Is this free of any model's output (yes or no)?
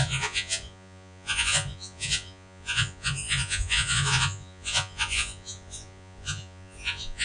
no